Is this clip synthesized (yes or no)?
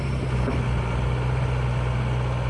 no